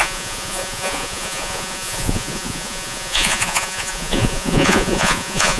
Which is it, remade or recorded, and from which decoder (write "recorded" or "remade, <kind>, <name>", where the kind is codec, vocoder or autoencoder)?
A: remade, vocoder, Vocos